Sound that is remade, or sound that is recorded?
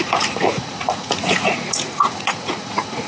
remade